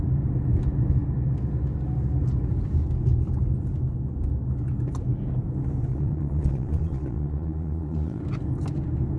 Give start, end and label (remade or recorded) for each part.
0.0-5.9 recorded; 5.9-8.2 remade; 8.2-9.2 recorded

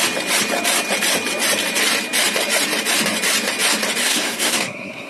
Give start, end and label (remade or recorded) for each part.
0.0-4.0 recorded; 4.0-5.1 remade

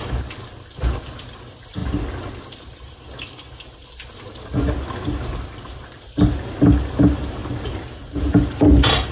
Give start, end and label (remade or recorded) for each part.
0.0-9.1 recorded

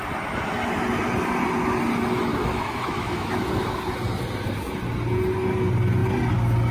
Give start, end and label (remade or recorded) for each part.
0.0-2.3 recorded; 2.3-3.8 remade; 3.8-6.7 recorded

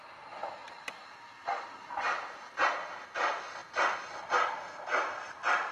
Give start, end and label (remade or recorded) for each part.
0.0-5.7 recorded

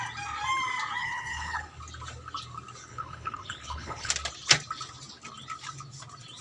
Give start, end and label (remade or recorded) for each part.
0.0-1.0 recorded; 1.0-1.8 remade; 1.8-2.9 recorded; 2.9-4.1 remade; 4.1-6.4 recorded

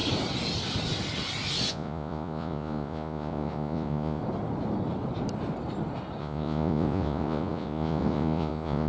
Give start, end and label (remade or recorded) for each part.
0.0-1.7 recorded; 1.7-4.2 remade; 4.2-6.2 recorded; 6.2-8.9 remade